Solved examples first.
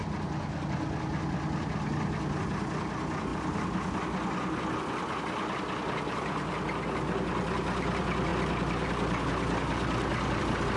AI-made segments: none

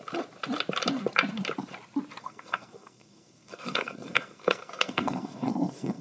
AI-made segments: 2.2-6.0 (codec, SNAC)

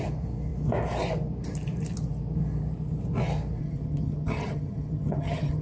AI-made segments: 3.6-5.6 (vocoder, HiFi-GAN)